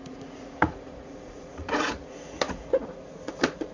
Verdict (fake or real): fake